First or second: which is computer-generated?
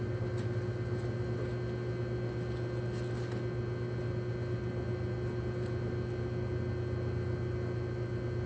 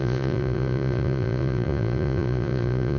second